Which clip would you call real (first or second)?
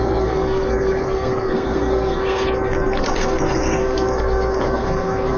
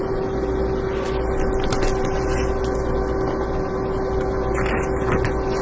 second